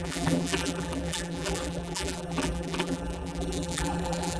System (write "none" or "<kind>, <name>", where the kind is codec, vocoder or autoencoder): vocoder, BigVGAN v2